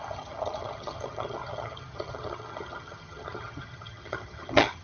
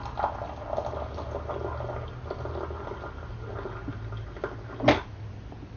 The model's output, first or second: first